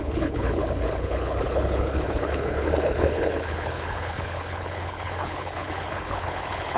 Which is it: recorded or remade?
remade